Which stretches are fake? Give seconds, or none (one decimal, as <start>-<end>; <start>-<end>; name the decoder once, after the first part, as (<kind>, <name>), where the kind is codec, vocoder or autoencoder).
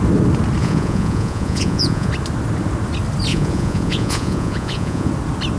0.6-2.1 (vocoder, Vocos); 3.3-5.1